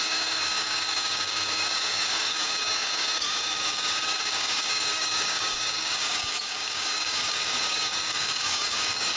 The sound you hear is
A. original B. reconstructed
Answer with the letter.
B